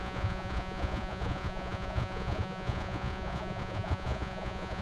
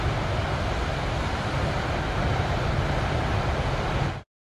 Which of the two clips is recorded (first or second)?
second